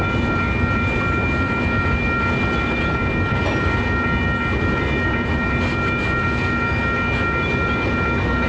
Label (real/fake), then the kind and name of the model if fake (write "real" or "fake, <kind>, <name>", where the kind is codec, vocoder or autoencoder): real